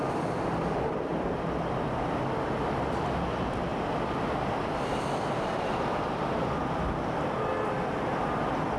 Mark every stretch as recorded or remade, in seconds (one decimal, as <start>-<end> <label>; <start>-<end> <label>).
0.0-8.8 recorded